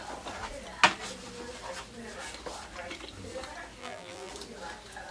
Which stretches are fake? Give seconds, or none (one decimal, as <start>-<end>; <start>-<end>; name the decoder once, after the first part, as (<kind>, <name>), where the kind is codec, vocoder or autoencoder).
3.8-4.3 (vocoder, BigVGAN v2)